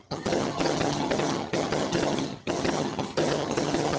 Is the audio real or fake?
fake